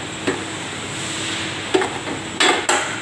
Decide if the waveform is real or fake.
real